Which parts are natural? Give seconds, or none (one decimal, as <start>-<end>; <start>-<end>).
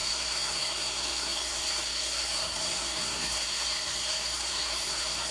none